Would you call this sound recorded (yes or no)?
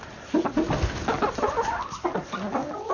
yes